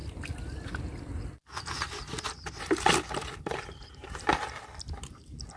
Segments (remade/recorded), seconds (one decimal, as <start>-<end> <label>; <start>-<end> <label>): 0.0-3.4 recorded; 3.4-4.3 remade; 4.3-5.6 recorded